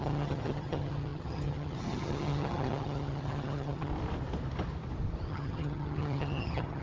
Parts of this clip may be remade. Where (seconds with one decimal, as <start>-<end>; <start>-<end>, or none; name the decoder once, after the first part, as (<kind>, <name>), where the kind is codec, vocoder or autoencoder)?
0.0-3.9 (vocoder, HiFi-GAN); 5.3-6.8